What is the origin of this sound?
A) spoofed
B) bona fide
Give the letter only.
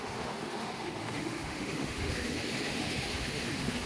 A